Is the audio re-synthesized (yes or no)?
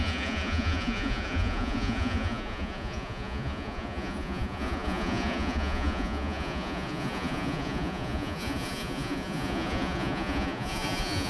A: yes